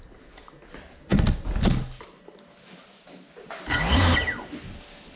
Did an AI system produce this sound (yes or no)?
no